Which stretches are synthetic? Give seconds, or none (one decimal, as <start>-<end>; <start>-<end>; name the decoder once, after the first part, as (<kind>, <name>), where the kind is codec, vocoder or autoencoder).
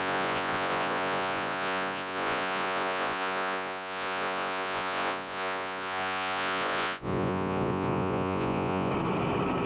0.0-8.9 (vocoder, Vocos)